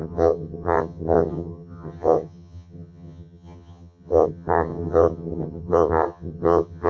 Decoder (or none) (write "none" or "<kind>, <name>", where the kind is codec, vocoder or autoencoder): vocoder, HiFi-GAN